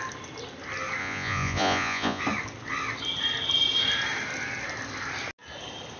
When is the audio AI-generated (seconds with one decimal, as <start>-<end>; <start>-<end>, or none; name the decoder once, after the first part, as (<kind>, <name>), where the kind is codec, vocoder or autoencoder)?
1.0-2.2 (vocoder, Vocos)